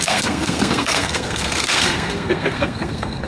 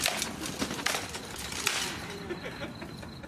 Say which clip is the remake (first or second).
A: first